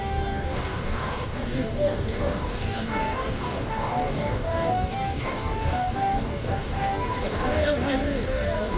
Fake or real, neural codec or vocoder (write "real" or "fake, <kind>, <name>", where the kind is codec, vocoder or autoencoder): fake, codec, DAC